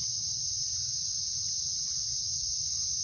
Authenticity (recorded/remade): recorded